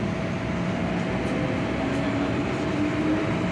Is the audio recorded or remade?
recorded